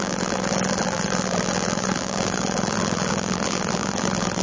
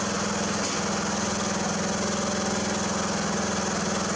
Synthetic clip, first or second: first